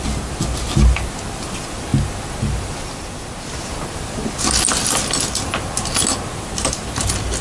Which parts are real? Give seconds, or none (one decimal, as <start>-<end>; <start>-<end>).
0.0-7.4